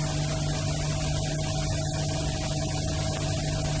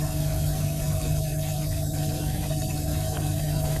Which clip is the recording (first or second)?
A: first